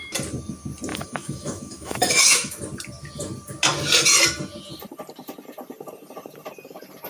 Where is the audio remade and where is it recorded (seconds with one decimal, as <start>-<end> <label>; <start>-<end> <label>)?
0.0-0.9 recorded; 0.9-2.6 remade; 2.6-7.1 recorded